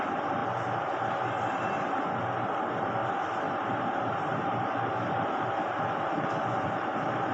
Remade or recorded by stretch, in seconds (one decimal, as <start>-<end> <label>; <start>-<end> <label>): 0.0-7.3 recorded